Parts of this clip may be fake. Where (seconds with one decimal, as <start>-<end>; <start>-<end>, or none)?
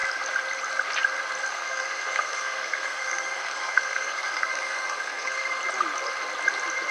1.5-5.6